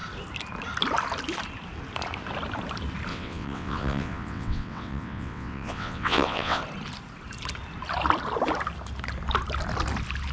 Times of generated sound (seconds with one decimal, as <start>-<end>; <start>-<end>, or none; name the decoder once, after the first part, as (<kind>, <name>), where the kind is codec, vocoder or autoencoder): 3.1-6.6 (vocoder, WaveNeXt)